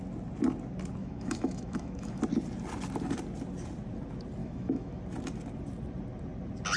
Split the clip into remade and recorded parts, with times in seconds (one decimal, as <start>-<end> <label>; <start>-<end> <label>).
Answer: 0.0-1.0 recorded; 1.0-2.2 remade; 2.2-4.4 recorded; 4.4-5.0 remade; 5.0-6.8 recorded